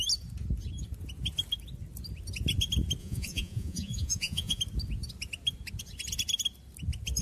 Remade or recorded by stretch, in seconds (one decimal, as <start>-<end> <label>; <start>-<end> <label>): 0.0-3.0 recorded; 3.0-4.6 remade; 4.6-7.2 recorded